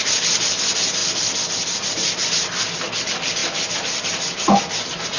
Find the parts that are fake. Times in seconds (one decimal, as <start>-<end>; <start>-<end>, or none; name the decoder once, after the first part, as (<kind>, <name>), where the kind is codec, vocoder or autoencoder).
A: 3.4-4.2 (vocoder, BigVGAN v2)